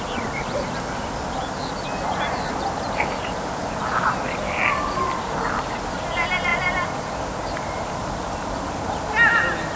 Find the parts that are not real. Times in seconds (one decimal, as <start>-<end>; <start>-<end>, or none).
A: none